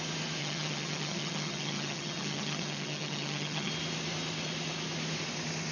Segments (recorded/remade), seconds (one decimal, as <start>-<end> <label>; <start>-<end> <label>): 0.0-0.4 recorded; 0.4-3.7 remade; 3.7-5.7 recorded